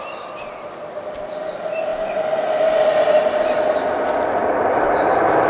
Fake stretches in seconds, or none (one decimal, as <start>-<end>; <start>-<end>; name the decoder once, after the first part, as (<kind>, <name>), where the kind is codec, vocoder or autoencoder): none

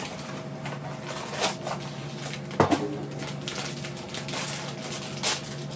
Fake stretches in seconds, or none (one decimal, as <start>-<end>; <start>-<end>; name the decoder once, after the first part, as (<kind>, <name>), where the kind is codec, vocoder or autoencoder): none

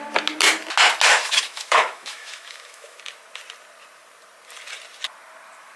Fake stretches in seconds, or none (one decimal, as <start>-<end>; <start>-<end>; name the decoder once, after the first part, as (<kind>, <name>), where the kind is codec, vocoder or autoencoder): 1.1-3.0 (autoencoder, DAC-VAE)

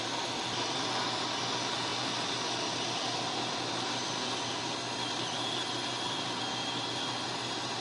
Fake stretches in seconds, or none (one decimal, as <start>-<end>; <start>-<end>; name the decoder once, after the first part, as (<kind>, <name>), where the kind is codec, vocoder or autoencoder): none